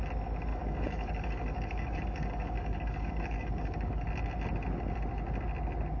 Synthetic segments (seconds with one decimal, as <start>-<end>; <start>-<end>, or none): 0.5-4.1